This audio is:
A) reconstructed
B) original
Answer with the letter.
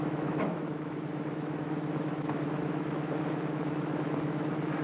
A